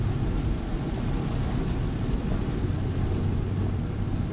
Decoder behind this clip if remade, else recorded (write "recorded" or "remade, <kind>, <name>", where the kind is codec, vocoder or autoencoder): remade, vocoder, BigVGAN v2